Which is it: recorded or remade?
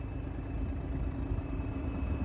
recorded